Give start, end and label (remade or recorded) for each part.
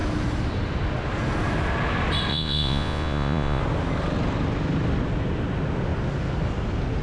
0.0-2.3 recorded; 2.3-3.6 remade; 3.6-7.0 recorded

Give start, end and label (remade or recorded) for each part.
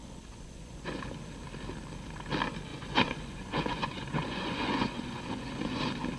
0.0-1.1 remade; 1.1-2.7 recorded; 2.7-5.8 remade; 5.8-6.2 recorded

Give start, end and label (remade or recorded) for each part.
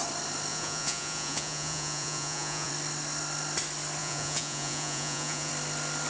0.0-0.5 recorded; 0.5-2.7 remade; 2.7-4.0 recorded; 4.0-5.5 remade; 5.5-6.1 recorded